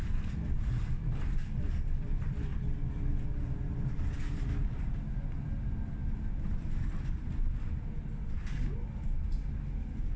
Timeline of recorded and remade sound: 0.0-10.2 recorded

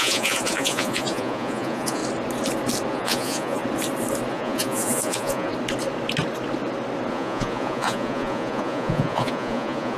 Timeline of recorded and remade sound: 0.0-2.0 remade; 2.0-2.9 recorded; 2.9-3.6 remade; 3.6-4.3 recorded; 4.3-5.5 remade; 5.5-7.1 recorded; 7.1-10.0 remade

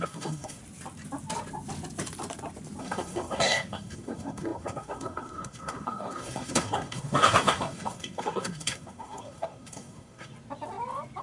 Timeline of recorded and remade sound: 0.0-0.6 remade; 0.6-2.8 recorded; 2.8-10.3 remade; 10.3-11.2 recorded

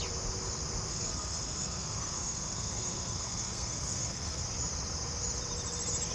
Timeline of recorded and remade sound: 0.0-0.9 recorded; 0.9-4.4 remade; 4.4-6.1 recorded

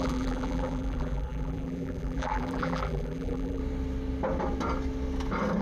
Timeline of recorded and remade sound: 0.0-3.6 remade; 3.6-5.6 recorded